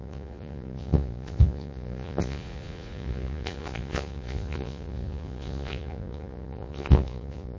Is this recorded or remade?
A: remade